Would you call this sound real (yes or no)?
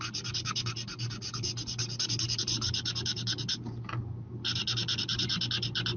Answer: yes